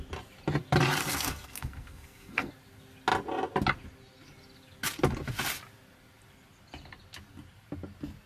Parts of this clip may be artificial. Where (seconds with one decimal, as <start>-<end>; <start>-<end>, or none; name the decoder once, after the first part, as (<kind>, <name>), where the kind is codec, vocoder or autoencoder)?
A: 1.0-2.5 (codec, SNAC)